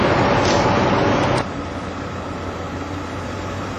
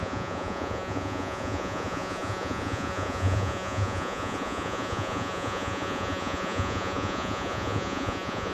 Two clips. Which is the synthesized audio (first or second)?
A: second